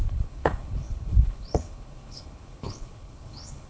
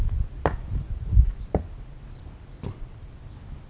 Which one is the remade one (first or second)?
first